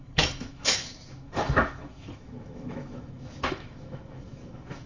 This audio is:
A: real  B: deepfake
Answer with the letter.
B